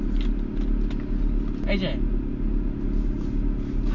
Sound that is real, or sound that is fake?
real